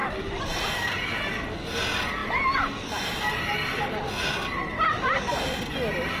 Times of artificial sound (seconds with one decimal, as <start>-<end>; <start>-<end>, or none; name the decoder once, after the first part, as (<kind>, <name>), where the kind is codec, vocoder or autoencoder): none